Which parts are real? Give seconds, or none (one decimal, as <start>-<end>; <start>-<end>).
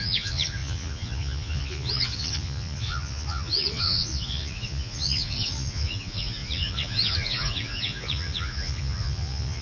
none